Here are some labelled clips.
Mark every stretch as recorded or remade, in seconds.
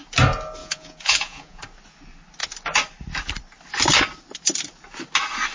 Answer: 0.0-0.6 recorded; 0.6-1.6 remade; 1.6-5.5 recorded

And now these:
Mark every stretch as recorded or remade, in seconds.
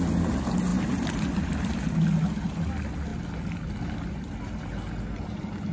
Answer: 0.0-5.7 recorded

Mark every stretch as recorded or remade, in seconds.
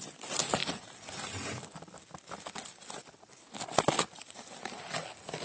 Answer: 0.0-5.4 recorded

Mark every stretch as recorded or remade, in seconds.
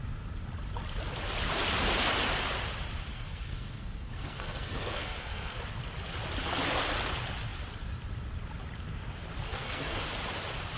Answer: 0.0-3.1 recorded; 3.1-5.6 remade; 5.6-9.5 recorded; 9.5-10.0 remade; 10.0-10.8 recorded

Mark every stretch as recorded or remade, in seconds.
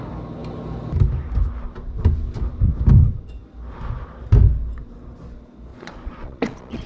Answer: 0.0-5.7 recorded; 5.7-6.9 remade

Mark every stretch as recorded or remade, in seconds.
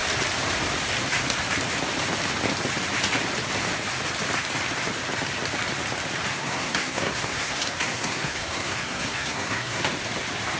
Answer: 0.0-6.3 recorded; 6.3-9.8 remade; 9.8-10.6 recorded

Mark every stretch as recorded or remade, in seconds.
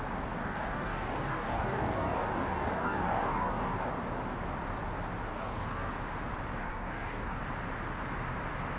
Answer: 0.0-0.4 recorded; 0.4-3.9 remade; 3.9-5.3 recorded; 5.3-5.9 remade; 5.9-6.6 recorded; 6.6-7.4 remade; 7.4-8.8 recorded